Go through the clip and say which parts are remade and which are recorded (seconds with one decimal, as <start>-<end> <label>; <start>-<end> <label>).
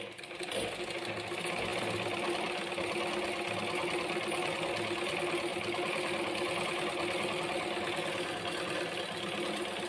0.0-1.7 recorded; 1.7-2.7 remade; 2.7-9.9 recorded